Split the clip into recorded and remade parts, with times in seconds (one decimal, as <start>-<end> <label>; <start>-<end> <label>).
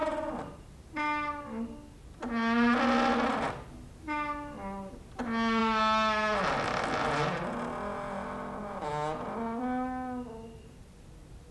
0.0-11.5 recorded